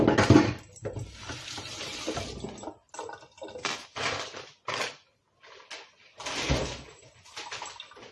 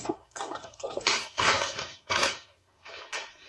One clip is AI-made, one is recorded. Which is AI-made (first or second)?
second